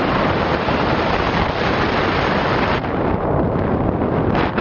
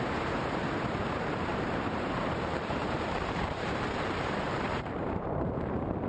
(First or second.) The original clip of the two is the first